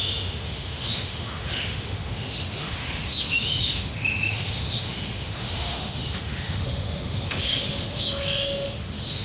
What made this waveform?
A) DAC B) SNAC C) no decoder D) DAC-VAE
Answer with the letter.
D